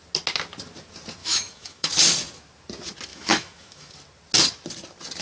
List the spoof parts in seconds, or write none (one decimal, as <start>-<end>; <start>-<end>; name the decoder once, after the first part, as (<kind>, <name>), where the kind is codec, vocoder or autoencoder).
1.2-1.9 (autoencoder, DAC-VAE); 3.1-3.9